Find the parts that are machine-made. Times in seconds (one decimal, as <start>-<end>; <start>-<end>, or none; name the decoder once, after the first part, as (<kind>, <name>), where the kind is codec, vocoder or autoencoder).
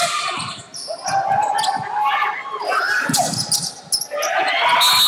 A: none